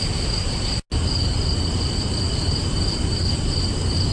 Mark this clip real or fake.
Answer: real